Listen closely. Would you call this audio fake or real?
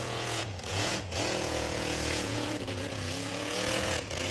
fake